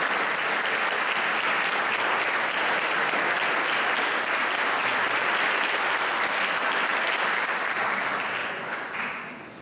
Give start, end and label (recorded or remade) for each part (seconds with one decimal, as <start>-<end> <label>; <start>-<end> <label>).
0.0-8.4 recorded; 8.4-9.6 remade